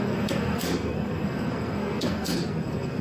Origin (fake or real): fake